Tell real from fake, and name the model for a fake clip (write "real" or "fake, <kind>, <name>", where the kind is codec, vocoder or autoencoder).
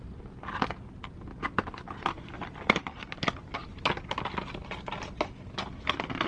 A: real